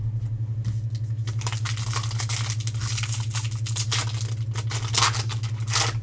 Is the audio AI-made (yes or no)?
no